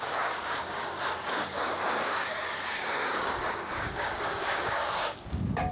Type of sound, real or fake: fake